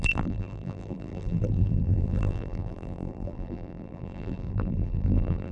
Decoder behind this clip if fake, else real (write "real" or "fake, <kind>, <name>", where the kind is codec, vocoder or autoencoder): fake, vocoder, BigVGAN v2